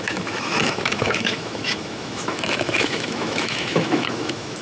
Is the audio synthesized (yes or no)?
yes